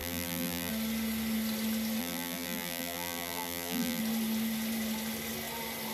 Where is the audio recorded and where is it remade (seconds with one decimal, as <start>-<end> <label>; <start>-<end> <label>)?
0.0-0.7 remade; 0.7-2.0 recorded; 2.0-4.0 remade; 4.0-5.9 recorded